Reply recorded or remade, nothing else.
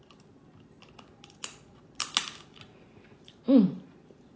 recorded